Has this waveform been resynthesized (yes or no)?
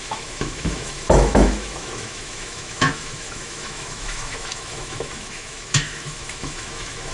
yes